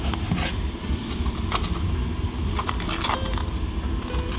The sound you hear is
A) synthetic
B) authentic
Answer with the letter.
B